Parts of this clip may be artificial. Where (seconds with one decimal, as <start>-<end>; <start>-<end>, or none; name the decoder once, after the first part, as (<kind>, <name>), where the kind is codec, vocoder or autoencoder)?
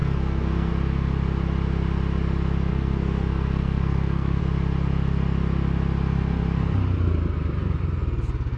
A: 0.0-0.7 (codec, SNAC); 2.7-4.4